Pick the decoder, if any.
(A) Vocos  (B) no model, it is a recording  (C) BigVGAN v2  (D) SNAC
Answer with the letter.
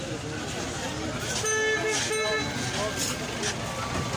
B